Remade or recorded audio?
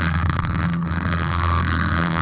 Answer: remade